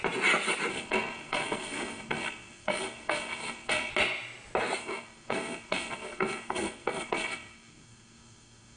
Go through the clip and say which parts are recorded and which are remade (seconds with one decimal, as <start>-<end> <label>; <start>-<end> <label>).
0.0-0.7 recorded; 0.7-3.9 remade; 3.9-4.8 recorded; 4.8-8.8 remade